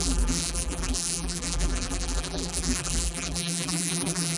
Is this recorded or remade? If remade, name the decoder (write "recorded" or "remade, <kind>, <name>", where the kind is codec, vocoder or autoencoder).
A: remade, vocoder, BigVGAN v2